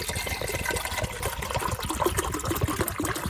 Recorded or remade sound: recorded